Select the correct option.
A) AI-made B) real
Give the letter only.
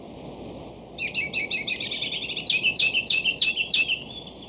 B